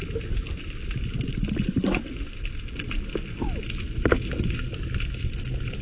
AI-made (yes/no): no